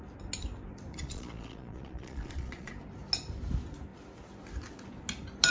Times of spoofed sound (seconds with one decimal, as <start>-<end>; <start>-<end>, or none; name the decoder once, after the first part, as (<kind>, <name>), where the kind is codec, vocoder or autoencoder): 0.9-2.7 (vocoder, Vocos)

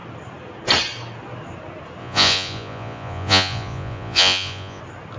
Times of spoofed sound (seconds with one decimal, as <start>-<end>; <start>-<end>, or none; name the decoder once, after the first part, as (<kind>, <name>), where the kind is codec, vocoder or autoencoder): 2.0-4.8 (vocoder, Vocos)

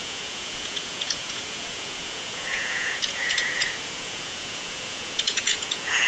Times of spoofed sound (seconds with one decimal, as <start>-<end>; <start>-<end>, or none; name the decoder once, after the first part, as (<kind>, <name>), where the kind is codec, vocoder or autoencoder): 0.0-6.1 (vocoder, Vocos)

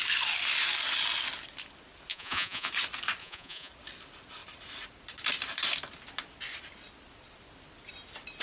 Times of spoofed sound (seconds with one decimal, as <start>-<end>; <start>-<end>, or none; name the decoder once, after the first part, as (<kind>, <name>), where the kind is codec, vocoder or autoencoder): 2.1-2.7 (vocoder, Vocos); 3.2-3.7

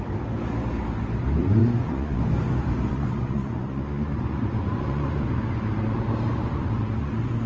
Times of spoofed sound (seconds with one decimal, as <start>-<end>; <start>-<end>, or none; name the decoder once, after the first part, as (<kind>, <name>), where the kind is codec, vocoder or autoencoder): 1.6-2.2 (vocoder, Vocos); 2.9-7.5